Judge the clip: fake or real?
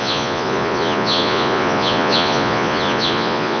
fake